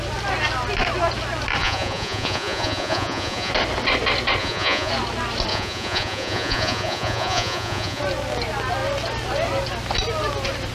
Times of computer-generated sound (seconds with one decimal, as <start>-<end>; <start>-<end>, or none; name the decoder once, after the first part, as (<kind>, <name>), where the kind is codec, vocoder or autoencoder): 1.6-3.5 (vocoder, Vocos); 4.4-4.9; 5.5-8.0